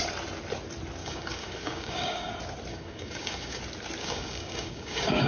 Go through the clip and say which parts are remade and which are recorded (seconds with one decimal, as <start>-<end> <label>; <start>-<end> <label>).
0.0-1.0 recorded; 1.0-2.3 remade; 2.3-2.7 recorded; 2.7-3.6 remade; 3.6-4.0 recorded; 4.0-5.3 remade